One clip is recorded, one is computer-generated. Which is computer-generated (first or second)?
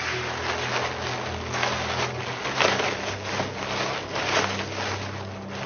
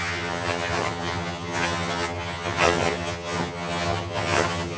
second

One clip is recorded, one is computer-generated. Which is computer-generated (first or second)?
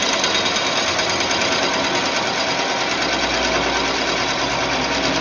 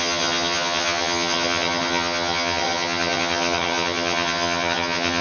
second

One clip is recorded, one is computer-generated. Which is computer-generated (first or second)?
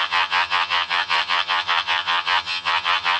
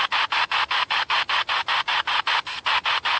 first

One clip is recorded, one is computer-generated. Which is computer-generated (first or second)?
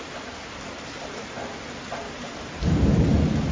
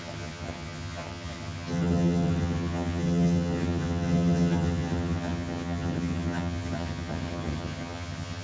second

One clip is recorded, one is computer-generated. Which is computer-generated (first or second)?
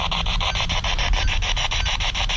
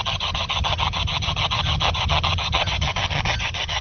second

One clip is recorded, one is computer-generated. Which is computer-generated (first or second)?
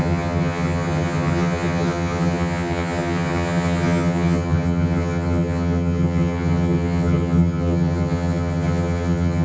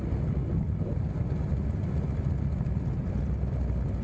first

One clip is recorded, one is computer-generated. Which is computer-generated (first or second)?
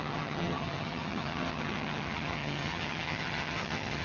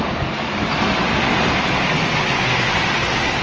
first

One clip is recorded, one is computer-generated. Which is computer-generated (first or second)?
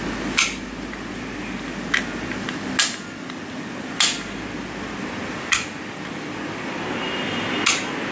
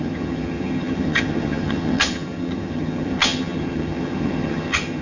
second